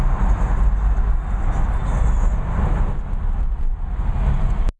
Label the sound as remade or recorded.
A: recorded